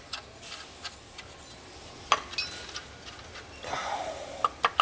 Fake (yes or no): no